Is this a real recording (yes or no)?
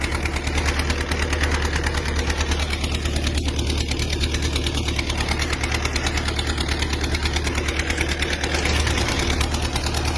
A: yes